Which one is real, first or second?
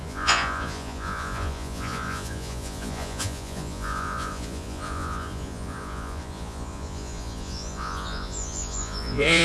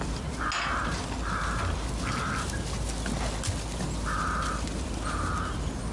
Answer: second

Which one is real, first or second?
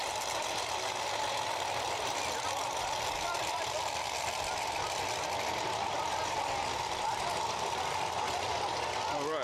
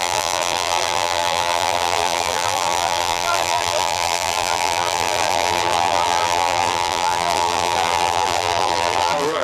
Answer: first